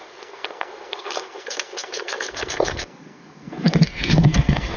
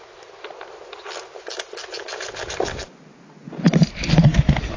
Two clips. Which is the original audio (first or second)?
second